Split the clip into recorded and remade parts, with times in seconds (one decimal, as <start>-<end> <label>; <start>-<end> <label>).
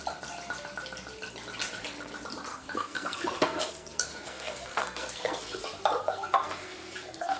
0.0-2.5 recorded; 2.5-5.6 remade; 5.6-6.0 recorded; 6.0-7.4 remade